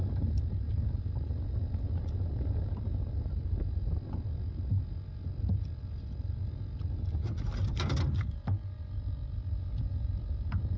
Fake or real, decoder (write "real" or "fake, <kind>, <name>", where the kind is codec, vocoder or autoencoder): real